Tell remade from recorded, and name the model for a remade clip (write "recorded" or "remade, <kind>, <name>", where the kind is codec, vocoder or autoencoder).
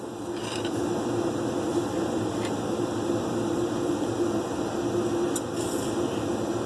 recorded